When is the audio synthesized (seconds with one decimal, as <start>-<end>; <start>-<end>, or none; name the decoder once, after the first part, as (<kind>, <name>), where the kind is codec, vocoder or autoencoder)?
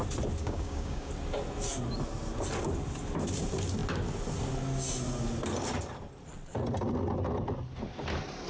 0.4-1.1 (codec, DAC)